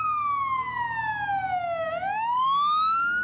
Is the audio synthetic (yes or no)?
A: no